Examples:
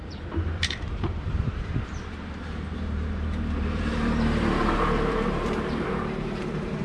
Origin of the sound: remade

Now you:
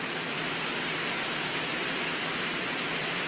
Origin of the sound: recorded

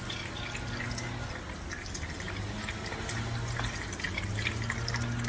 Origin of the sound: recorded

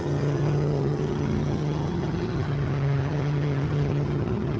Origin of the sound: remade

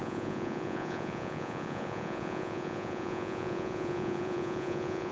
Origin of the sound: remade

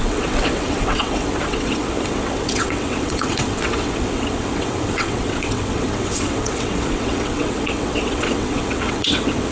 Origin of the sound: remade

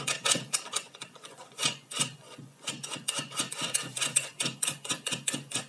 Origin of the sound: remade